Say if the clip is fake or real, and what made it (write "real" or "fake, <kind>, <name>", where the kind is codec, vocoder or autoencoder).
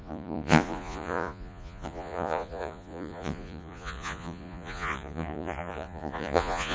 fake, vocoder, Vocos